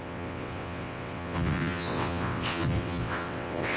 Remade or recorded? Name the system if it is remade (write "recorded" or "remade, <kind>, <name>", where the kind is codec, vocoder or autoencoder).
remade, vocoder, WaveNeXt